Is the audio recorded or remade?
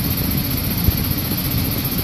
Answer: recorded